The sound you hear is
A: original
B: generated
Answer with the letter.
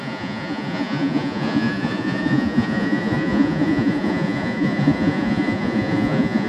B